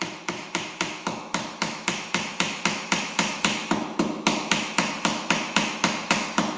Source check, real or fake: fake